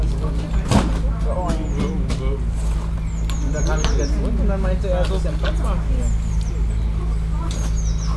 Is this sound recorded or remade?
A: recorded